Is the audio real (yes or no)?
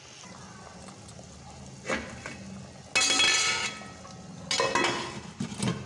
yes